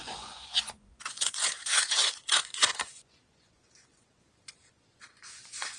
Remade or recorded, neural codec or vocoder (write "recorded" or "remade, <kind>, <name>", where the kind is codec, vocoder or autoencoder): remade, vocoder, Vocos